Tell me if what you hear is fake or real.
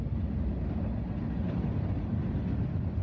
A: real